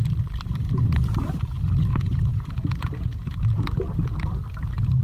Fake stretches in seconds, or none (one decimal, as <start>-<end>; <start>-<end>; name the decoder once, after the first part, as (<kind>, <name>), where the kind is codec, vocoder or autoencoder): 1.9-3.4 (vocoder, Vocos)